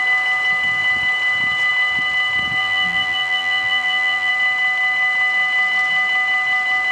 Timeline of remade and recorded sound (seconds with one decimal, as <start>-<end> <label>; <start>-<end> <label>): 0.0-2.6 recorded; 2.6-4.3 remade; 4.3-6.9 recorded